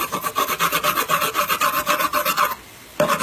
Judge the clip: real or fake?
real